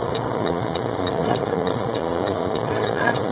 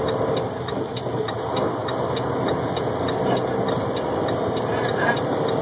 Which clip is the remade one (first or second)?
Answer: first